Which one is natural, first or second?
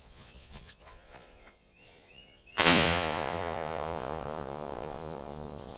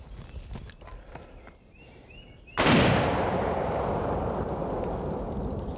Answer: second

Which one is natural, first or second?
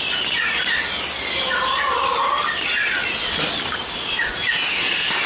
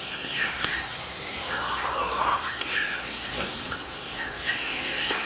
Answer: first